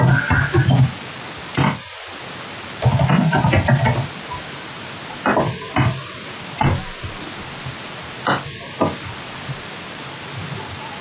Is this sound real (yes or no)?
yes